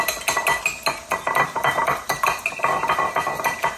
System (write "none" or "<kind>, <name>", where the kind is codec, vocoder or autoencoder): none